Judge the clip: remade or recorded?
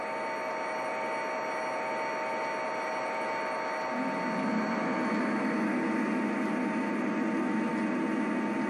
recorded